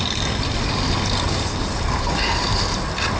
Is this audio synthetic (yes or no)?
no